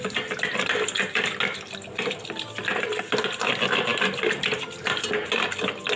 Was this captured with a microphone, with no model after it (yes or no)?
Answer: yes